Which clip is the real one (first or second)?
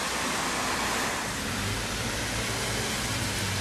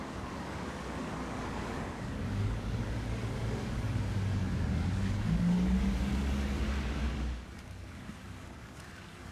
first